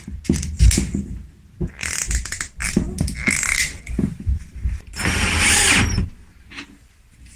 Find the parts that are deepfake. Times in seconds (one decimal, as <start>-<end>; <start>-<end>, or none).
none